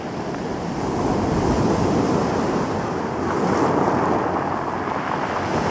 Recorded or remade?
recorded